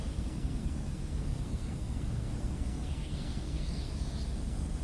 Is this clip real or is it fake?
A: fake